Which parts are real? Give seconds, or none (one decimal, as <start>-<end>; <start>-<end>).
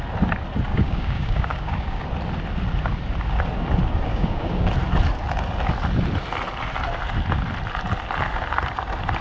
0.0-0.7; 2.0-4.1; 4.7-9.2